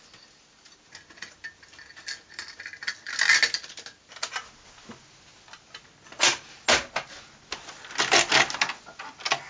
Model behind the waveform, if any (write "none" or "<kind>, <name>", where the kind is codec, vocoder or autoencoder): none